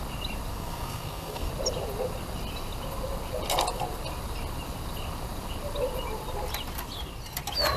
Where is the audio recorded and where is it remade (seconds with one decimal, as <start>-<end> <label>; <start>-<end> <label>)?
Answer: 0.0-0.5 recorded; 0.5-1.5 remade; 1.5-7.8 recorded